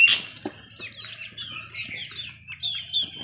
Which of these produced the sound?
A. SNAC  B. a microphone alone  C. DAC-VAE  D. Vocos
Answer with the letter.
B